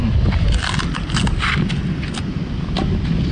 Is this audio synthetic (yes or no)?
no